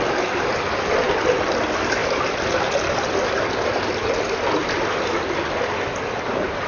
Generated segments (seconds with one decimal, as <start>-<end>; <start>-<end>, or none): none